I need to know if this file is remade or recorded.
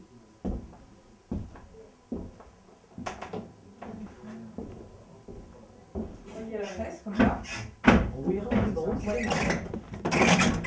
recorded